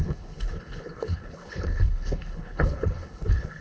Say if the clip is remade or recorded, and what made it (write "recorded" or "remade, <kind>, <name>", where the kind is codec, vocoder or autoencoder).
remade, codec, HILCodec